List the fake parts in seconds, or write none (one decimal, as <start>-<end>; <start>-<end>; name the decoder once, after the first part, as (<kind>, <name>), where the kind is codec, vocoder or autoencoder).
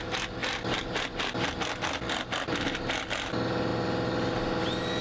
none